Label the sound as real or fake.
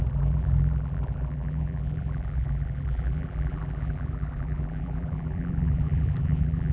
fake